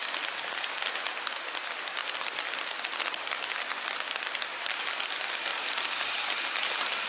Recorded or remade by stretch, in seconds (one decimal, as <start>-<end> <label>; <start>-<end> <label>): 0.0-5.5 recorded; 5.5-6.2 remade; 6.2-7.1 recorded